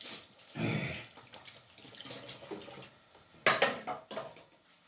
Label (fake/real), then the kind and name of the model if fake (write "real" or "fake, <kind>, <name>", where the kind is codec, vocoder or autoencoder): real